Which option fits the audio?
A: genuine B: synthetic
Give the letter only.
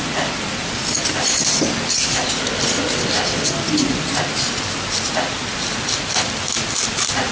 A